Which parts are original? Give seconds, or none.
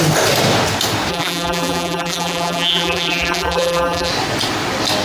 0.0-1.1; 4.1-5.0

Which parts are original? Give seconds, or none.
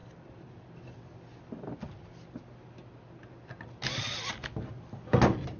0.0-5.6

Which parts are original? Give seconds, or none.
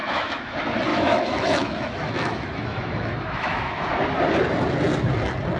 0.5-0.9; 3.9-5.6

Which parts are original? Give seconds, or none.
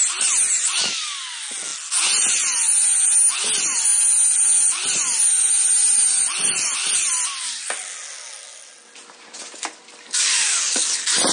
0.0-11.3